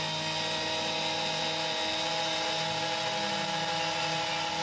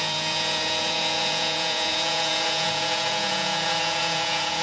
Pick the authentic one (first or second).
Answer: first